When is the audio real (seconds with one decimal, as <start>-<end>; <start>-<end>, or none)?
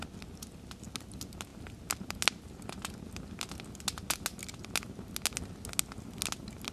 0.0-6.7